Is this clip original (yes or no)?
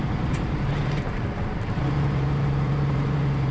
no